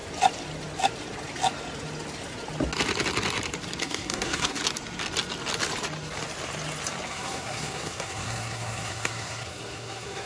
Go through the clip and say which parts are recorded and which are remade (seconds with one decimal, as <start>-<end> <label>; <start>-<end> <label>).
0.0-3.8 recorded; 3.8-4.6 remade; 4.6-7.1 recorded; 7.1-10.3 remade